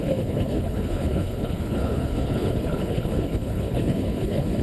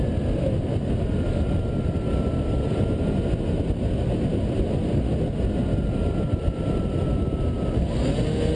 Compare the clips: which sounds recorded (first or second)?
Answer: second